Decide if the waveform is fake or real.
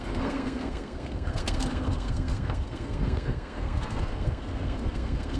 fake